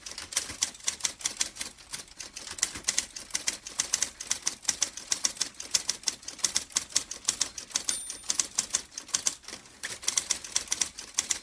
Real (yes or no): yes